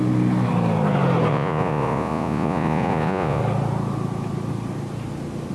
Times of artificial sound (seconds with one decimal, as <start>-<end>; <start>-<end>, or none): 1.3-3.4